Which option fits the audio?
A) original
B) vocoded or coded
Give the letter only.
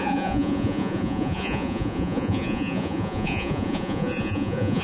B